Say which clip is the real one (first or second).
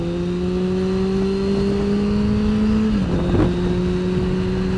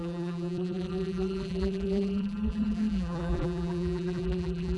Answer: first